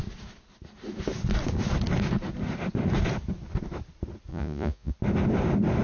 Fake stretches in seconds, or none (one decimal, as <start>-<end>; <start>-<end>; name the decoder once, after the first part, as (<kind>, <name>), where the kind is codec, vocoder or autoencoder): 4.3-4.9 (vocoder, Vocos)